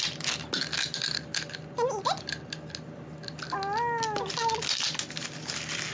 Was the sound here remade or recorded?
recorded